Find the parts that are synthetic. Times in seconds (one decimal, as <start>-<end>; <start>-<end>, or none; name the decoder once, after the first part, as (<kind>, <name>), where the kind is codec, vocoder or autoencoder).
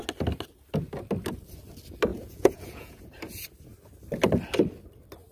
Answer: 2.1-3.1 (vocoder, Vocos)